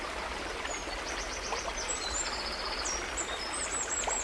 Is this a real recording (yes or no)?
yes